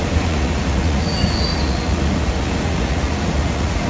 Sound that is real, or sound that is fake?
fake